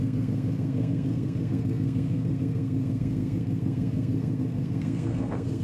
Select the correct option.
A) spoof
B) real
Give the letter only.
A